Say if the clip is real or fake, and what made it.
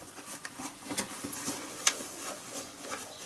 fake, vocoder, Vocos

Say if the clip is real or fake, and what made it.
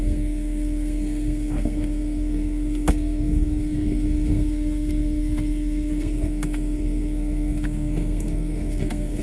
fake, codec, SNAC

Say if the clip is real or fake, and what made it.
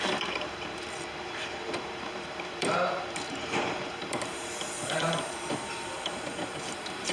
fake, vocoder, BigVGAN v2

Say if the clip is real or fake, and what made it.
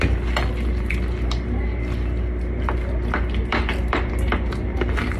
real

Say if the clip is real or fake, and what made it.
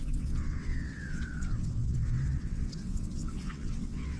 fake, vocoder, WaveNeXt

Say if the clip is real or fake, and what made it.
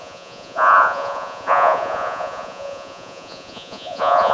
fake, vocoder, Vocos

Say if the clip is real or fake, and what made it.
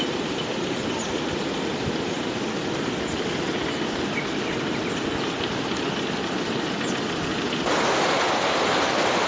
real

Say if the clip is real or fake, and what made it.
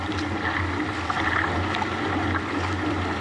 real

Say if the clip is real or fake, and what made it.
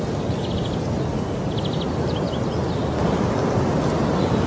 real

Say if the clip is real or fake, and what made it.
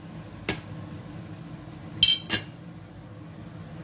real